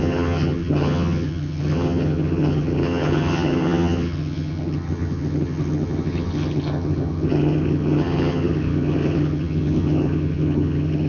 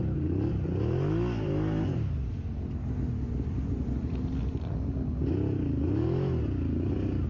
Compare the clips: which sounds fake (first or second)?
first